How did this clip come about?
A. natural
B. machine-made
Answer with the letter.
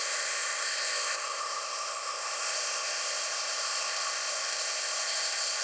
B